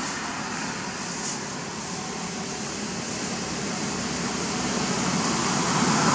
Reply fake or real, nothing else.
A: real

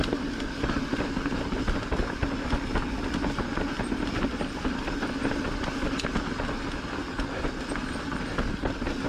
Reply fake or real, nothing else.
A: real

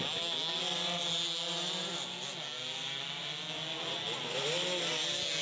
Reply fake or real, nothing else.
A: real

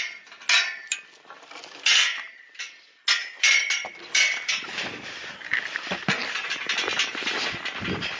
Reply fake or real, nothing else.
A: real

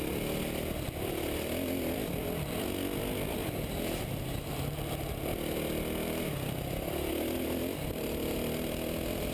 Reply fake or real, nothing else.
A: real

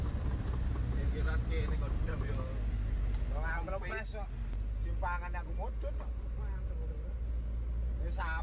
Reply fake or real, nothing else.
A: real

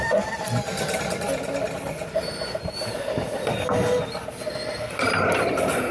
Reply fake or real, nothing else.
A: real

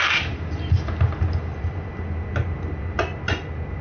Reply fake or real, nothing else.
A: real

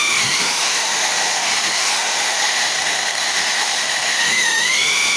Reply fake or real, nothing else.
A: fake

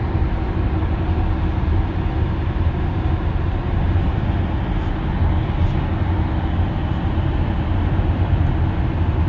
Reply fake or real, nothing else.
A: real